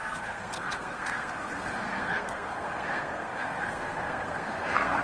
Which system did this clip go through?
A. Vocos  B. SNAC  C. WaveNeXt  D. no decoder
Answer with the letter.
B